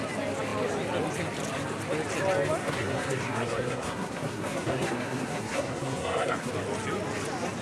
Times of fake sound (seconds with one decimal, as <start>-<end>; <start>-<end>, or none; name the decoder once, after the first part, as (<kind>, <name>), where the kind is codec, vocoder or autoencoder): 2.6-6.5 (codec, SNAC)